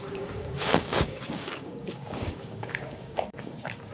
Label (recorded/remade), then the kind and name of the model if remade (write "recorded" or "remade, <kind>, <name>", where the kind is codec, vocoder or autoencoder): remade, codec, DAC